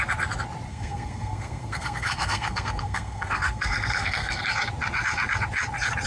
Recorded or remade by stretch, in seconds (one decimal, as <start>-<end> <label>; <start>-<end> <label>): 0.0-0.7 recorded; 0.7-4.4 remade; 4.4-6.1 recorded